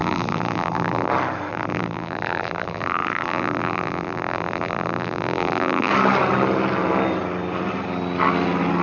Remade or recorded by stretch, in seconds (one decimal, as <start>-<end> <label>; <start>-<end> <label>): 0.0-1.1 remade; 1.1-1.5 recorded; 1.5-5.9 remade; 5.9-8.8 recorded